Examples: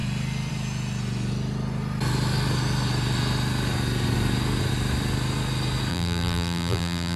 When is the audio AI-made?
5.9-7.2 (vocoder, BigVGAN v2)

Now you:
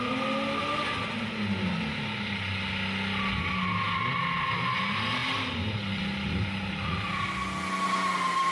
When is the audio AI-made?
none

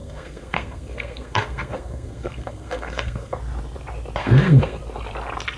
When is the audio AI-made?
0.0-3.4 (codec, SNAC); 4.2-4.8

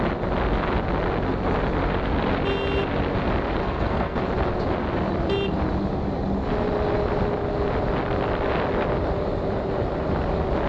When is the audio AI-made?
3.6-4.2 (codec, SNAC)

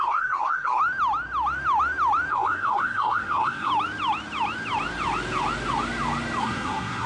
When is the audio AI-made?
0.0-0.8 (codec, SNAC); 2.3-3.7; 6.4-7.1